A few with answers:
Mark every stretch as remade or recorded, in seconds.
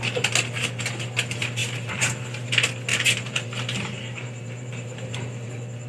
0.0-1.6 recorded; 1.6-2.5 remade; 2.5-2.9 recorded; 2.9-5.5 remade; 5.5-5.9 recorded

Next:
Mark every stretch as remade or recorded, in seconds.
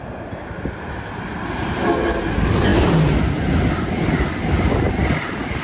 0.0-5.6 recorded